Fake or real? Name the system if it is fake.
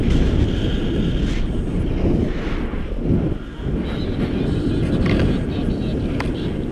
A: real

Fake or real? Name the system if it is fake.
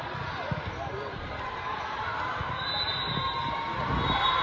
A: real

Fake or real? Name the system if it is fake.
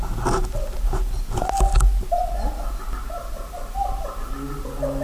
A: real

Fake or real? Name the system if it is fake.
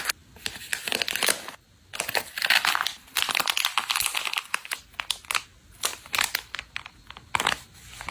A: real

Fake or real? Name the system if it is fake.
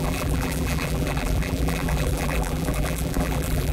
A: fake, vocoder, BigVGAN v2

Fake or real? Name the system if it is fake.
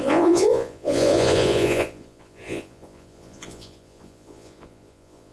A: fake, vocoder, Vocos